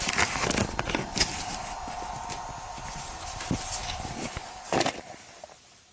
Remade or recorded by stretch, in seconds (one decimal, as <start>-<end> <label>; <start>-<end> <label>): 0.0-5.9 recorded